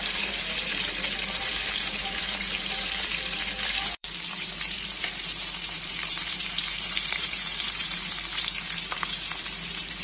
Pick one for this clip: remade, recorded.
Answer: remade